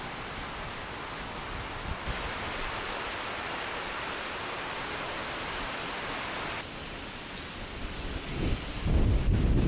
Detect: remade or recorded recorded